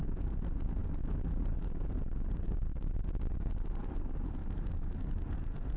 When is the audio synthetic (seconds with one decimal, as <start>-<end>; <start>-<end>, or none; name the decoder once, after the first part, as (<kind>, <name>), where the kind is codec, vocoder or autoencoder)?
none